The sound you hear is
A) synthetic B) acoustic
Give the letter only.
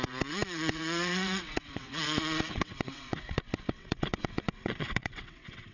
A